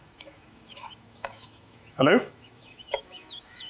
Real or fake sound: fake